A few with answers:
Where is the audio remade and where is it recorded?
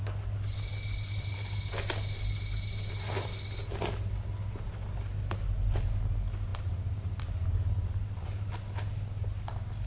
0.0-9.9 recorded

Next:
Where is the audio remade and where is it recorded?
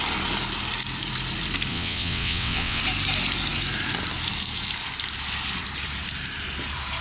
0.0-1.7 recorded; 1.7-2.8 remade; 2.8-7.0 recorded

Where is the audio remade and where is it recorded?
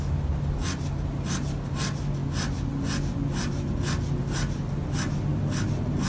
0.0-6.1 recorded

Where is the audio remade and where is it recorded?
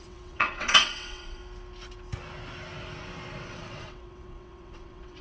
0.0-1.4 remade; 1.4-3.4 recorded; 3.4-5.2 remade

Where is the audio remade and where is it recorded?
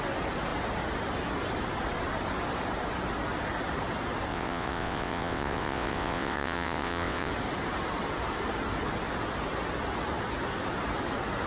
0.0-4.3 recorded; 4.3-7.3 remade; 7.3-11.5 recorded